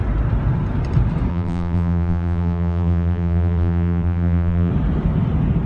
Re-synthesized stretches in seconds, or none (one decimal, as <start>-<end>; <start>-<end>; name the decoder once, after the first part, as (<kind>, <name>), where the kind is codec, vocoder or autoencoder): 1.3-4.7 (vocoder, BigVGAN v2)